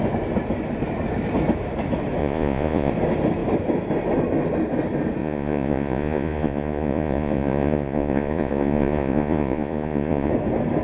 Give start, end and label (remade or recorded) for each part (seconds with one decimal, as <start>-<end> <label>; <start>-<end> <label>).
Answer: 0.0-2.2 recorded; 2.2-2.9 remade; 2.9-5.2 recorded; 5.2-10.3 remade; 10.3-10.8 recorded